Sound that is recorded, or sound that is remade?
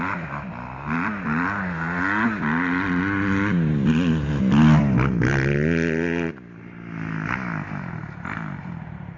recorded